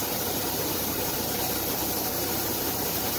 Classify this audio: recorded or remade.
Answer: remade